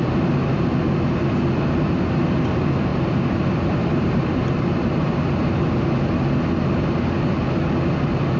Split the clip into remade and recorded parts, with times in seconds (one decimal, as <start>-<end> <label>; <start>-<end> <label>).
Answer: 0.0-2.9 recorded; 2.9-5.6 remade; 5.6-8.4 recorded